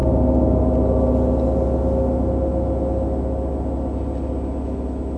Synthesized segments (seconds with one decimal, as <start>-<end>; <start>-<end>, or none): none